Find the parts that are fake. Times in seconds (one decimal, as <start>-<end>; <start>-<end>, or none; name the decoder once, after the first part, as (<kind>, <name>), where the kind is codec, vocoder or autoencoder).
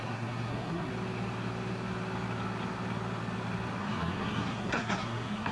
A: 0.0-0.9 (codec, SNAC); 3.8-5.5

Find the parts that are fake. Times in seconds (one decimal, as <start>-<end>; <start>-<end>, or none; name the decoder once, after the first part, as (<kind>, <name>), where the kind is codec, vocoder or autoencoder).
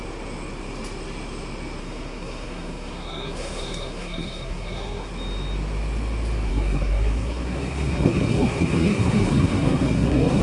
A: 1.8-5.1 (codec, SNAC); 6.5-10.4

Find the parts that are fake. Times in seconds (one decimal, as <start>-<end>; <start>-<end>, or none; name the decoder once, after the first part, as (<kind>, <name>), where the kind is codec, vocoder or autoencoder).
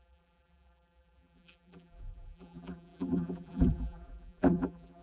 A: 0.0-5.0 (vocoder, BigVGAN v2)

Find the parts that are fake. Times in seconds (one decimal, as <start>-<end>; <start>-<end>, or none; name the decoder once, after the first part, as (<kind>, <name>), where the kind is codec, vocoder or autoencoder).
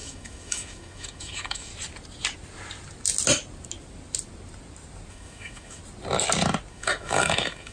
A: 0.0-1.7 (autoencoder, DAC-VAE); 5.1-5.8; 6.7-7.7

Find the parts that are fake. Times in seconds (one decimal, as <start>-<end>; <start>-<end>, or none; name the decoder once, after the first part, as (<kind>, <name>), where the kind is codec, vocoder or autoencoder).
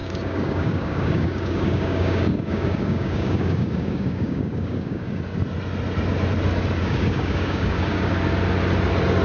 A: 0.0-5.2 (codec, DAC); 6.8-8.1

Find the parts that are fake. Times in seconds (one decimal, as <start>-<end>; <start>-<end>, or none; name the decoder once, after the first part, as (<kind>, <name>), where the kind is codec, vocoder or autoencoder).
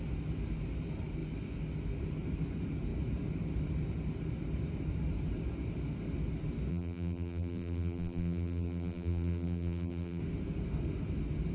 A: 6.7-10.2 (vocoder, BigVGAN v2)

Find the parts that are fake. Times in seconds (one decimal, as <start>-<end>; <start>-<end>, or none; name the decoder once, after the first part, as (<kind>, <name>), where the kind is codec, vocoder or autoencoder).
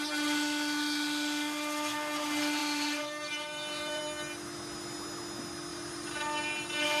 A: 2.6-4.0 (vocoder, BigVGAN v2); 5.7-6.6